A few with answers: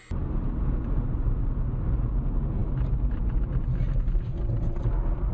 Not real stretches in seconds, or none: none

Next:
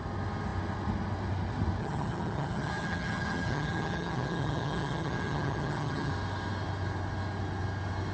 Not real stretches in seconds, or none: 1.8-6.1 (vocoder, HiFi-GAN)

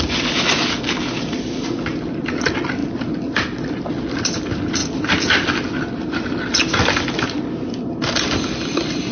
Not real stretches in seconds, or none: none

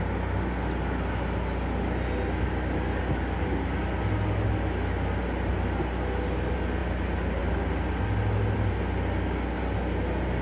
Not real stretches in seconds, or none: none

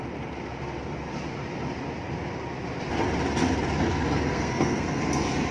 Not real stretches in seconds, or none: 4.3-5.0 (codec, SNAC)

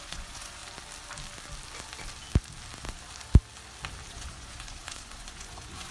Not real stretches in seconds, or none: 0.0-0.6 (vocoder, Vocos); 4.1-5.9

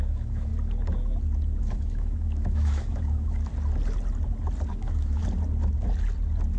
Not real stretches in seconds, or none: 0.0-0.5 (autoencoder, DAC-VAE); 1.6-3.5; 4.7-5.2